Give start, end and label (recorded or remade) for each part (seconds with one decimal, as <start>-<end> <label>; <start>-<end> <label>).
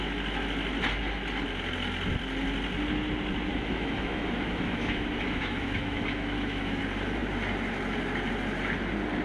0.0-3.5 recorded; 3.5-6.8 remade; 6.8-9.2 recorded